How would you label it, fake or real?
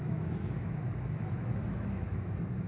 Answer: fake